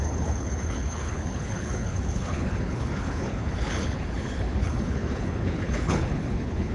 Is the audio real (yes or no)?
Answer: no